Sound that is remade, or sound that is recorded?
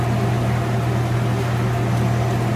recorded